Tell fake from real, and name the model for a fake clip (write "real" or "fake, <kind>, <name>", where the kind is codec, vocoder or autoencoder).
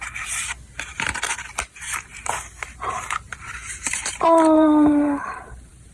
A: fake, vocoder, BigVGAN v2